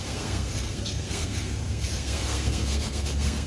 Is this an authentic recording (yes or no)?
no